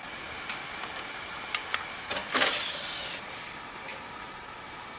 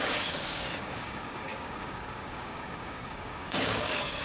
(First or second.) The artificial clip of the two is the second